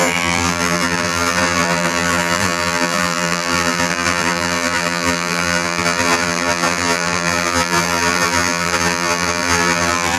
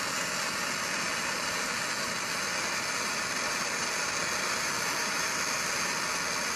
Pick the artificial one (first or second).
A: first